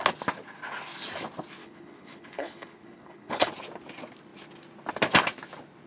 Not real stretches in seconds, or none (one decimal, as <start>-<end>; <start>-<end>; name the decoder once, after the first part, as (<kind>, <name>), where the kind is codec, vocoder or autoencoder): 1.6-3.5 (codec, HILCodec)